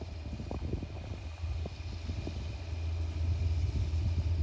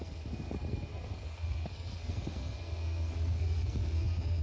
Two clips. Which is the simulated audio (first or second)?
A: second